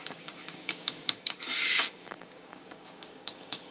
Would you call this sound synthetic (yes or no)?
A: yes